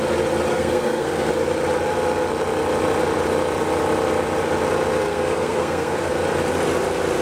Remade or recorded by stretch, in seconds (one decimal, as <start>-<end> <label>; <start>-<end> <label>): 0.0-0.5 recorded; 0.5-1.3 remade; 1.3-5.0 recorded; 5.0-6.1 remade; 6.1-7.2 recorded